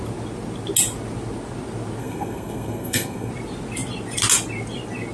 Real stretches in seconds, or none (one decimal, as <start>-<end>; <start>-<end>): 0.0-2.0; 3.3-5.1